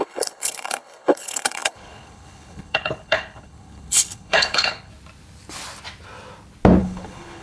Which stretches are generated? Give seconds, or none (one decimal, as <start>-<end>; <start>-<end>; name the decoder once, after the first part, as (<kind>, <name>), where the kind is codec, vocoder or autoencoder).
0.0-4.9 (codec, HILCodec); 6.8-7.4